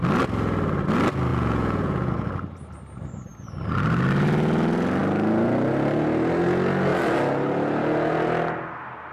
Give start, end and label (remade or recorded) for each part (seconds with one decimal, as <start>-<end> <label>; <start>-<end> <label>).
0.0-1.3 recorded; 1.3-2.1 remade; 2.1-9.1 recorded